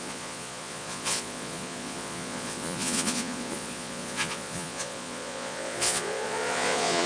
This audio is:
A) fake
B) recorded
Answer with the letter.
A